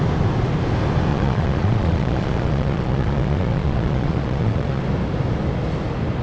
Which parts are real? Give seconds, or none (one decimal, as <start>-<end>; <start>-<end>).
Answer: 0.0-1.1; 4.8-6.2

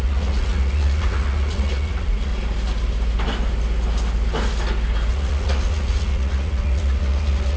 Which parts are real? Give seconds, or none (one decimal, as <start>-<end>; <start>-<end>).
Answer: 2.3-5.1

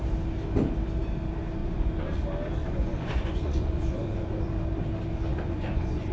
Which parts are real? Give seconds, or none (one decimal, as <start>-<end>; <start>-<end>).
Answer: 0.0-1.6; 2.2-2.6; 4.5-5.3

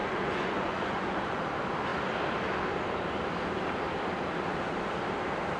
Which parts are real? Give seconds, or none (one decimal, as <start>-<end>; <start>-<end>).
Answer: 1.4-5.6

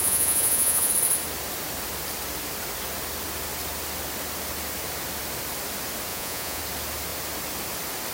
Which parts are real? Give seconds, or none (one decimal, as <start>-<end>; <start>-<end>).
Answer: 0.9-6.1; 6.6-8.1

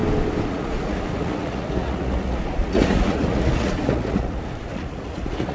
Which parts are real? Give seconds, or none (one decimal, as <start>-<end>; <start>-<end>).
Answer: 0.0-0.5

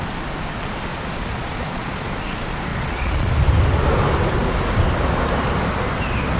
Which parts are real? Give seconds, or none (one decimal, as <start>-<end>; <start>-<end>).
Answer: 0.0-0.9; 2.1-2.7; 3.3-6.4